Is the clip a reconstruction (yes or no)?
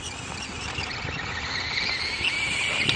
no